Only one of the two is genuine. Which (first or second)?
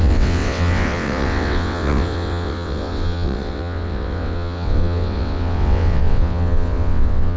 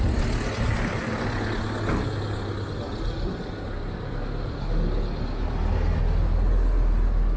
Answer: second